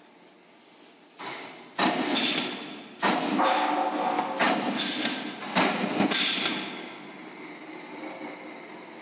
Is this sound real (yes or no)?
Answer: yes